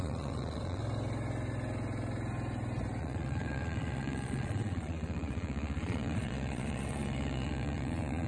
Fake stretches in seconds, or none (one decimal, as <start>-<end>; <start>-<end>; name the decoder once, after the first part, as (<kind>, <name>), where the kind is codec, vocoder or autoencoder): 0.0-0.8 (vocoder, Vocos); 3.0-8.3